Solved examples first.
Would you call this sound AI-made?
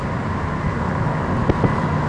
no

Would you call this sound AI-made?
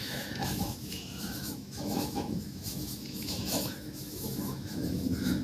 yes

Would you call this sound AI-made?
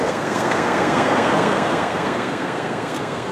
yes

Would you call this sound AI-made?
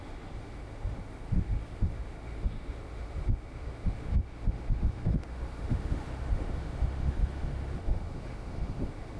yes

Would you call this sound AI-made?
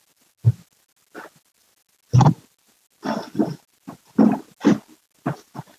no